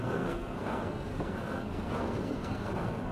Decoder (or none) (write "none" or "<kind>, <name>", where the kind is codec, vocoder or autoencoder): codec, SNAC